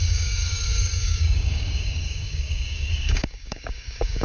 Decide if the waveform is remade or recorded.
remade